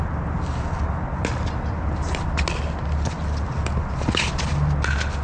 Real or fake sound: real